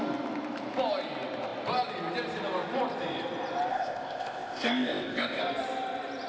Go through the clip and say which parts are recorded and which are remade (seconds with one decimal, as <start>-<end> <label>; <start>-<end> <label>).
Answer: 0.0-3.7 recorded; 3.7-5.4 remade; 5.4-6.3 recorded